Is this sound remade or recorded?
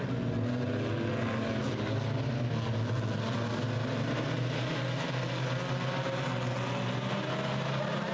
recorded